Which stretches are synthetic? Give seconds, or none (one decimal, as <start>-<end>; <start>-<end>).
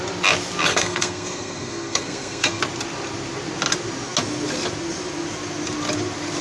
0.7-2.6